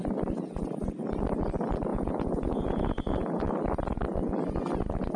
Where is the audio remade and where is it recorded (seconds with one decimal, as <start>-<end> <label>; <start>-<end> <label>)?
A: 0.0-1.9 recorded; 1.9-3.4 remade; 3.4-5.2 recorded